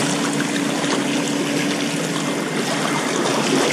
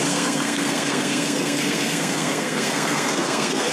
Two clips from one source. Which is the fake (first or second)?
second